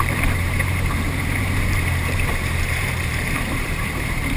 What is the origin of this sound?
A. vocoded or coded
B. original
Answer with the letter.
A